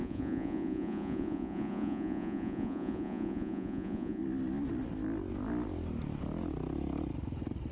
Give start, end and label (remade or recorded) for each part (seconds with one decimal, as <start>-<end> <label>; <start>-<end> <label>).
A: 0.0-4.2 remade; 4.2-7.7 recorded